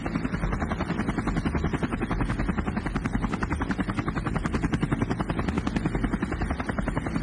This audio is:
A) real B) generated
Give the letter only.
A